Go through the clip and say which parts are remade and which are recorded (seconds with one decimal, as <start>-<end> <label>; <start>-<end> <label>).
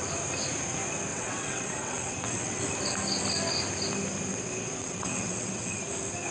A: 0.0-1.1 recorded; 1.1-2.6 remade; 2.6-4.3 recorded; 4.3-5.8 remade; 5.8-6.3 recorded